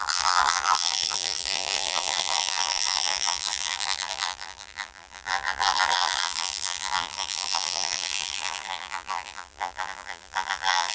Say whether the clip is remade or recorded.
remade